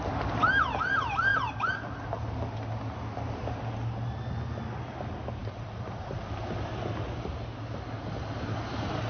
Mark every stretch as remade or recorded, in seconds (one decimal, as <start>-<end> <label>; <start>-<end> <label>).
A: 0.0-5.4 recorded; 5.4-6.5 remade; 6.5-9.1 recorded